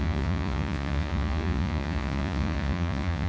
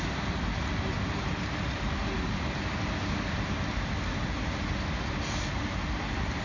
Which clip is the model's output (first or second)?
first